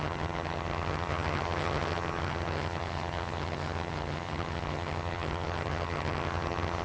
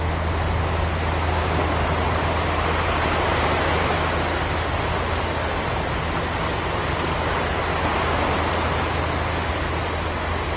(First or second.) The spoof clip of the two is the first